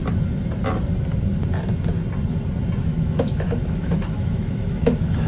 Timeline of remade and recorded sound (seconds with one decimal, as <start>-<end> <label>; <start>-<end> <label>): 0.0-2.8 recorded; 2.8-5.3 remade